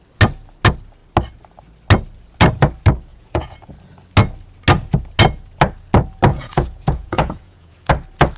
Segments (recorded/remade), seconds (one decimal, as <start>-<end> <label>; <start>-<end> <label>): 0.0-3.1 recorded; 3.1-3.7 remade; 3.7-6.3 recorded; 6.3-7.9 remade; 7.9-8.4 recorded